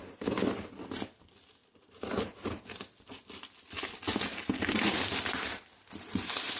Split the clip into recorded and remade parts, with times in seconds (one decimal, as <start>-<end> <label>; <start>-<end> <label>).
0.0-6.6 recorded